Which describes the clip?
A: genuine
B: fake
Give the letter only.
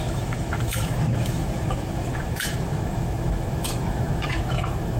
B